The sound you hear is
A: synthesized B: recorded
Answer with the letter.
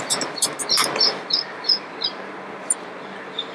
A